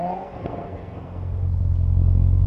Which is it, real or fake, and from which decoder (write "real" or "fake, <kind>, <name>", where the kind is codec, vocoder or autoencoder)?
fake, codec, SNAC